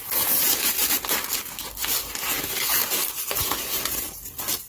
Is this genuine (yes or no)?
yes